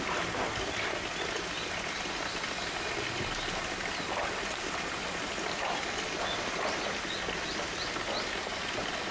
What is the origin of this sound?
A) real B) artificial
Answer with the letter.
A